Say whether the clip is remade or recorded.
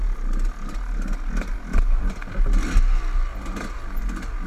recorded